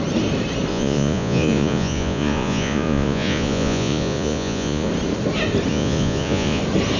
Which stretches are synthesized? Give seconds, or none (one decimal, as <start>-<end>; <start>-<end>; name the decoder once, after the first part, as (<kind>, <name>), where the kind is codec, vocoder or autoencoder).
0.7-4.9 (vocoder, Vocos); 5.7-6.6